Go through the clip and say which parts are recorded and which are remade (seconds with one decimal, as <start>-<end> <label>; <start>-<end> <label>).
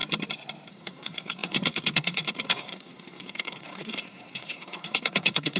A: 0.0-0.7 recorded; 0.7-5.6 remade